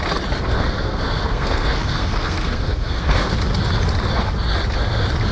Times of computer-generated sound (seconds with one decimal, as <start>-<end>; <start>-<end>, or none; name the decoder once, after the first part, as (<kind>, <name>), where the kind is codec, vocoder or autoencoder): 0.5-3.4 (codec, SNAC)